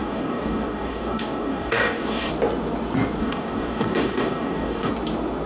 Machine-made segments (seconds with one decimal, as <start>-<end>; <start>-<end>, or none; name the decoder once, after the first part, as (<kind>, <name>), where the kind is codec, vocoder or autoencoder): 0.0-2.3 (codec, DAC); 3.2-4.9